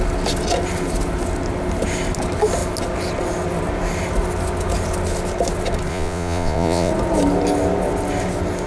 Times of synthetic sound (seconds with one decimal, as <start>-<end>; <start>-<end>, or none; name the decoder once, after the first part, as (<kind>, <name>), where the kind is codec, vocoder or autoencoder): 5.9-6.9 (vocoder, Vocos)